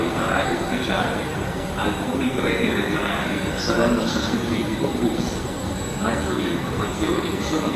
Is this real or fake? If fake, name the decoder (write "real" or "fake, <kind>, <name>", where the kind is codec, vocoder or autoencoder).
fake, codec, SNAC